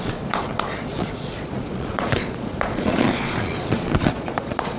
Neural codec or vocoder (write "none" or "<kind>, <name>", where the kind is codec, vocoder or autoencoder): vocoder, Vocos